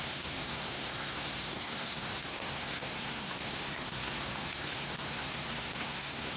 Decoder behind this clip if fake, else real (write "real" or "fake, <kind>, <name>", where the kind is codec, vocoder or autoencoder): fake, codec, SNAC